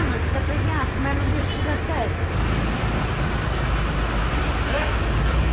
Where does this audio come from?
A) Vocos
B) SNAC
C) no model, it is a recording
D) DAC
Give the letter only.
C